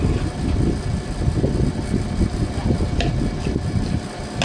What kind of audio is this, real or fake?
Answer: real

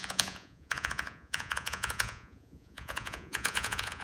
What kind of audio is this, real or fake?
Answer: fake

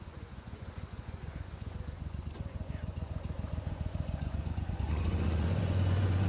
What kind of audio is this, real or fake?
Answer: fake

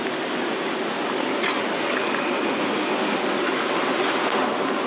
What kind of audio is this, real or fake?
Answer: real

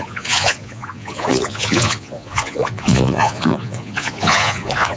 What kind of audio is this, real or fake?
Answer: fake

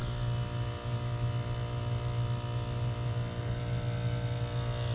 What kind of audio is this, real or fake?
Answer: real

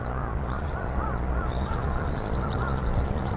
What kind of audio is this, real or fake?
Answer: fake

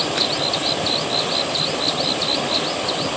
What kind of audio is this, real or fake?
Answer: real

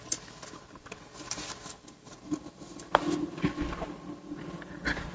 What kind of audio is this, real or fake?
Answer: real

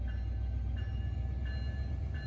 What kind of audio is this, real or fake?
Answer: real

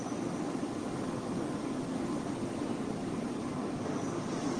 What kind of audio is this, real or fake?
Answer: real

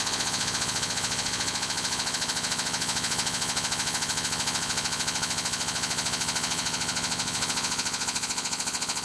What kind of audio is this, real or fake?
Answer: fake